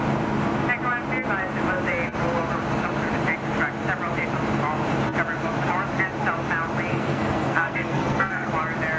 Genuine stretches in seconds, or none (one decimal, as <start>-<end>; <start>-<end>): 0.0-6.9; 8.5-9.0